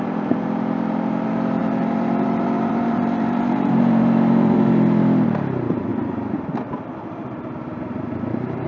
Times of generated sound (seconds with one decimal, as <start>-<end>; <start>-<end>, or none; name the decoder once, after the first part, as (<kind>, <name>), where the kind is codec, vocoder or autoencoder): 0.0-5.9 (vocoder, BigVGAN v2); 7.8-8.7